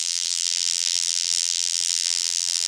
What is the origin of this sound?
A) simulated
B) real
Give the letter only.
A